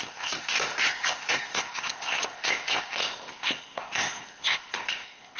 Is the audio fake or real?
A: fake